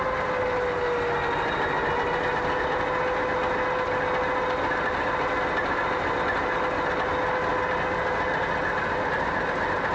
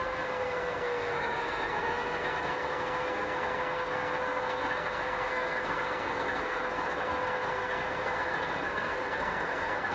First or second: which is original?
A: first